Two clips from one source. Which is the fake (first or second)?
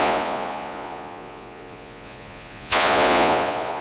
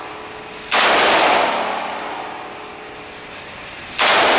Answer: first